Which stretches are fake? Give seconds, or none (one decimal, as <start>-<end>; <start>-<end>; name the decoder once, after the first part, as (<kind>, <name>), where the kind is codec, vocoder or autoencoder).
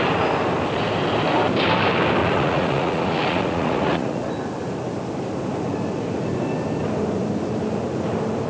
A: 2.2-4.3 (vocoder, Vocos)